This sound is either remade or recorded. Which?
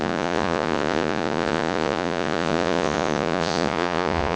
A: remade